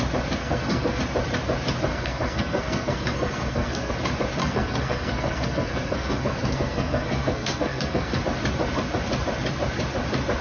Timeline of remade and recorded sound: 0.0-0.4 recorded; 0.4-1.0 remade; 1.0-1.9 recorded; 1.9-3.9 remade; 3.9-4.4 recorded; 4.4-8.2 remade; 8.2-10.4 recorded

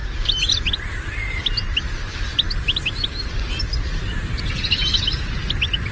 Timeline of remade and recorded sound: 0.0-2.3 recorded; 2.3-4.4 remade; 4.4-5.9 recorded